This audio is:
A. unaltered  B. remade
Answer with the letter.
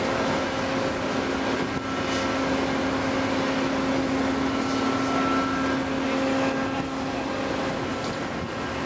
A